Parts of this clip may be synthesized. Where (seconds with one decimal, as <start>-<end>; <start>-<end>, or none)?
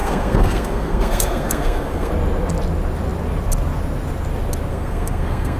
0.0-2.1; 4.7-5.6